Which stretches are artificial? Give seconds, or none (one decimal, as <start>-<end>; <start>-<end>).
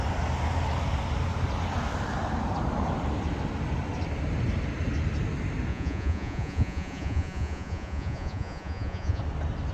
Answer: 5.7-9.2